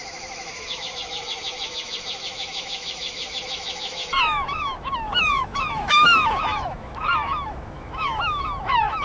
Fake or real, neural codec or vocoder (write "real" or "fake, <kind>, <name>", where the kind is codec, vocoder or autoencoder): fake, autoencoder, DAC-VAE